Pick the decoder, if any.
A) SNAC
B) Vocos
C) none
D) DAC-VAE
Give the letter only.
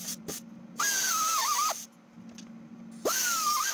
C